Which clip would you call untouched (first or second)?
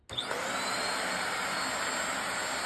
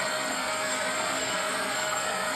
first